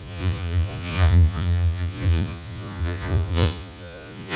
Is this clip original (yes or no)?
no